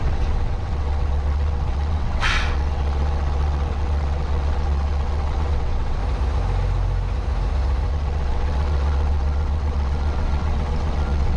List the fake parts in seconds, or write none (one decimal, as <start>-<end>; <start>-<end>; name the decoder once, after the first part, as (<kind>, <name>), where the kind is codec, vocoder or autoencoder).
0.0-6.0 (vocoder, WaveNeXt); 7.9-11.4